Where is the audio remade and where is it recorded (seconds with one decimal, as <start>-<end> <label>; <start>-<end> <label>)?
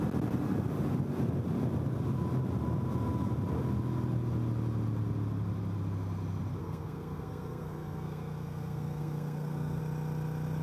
0.0-6.6 recorded; 6.6-9.8 remade; 9.8-10.6 recorded